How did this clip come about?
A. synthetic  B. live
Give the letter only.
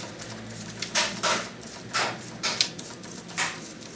B